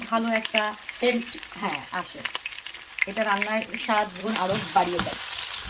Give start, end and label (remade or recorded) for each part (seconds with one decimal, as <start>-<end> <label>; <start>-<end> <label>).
0.0-0.8 recorded; 0.8-2.6 remade; 2.6-4.2 recorded; 4.2-5.1 remade; 5.1-5.7 recorded